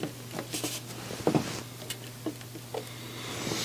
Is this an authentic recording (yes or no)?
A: yes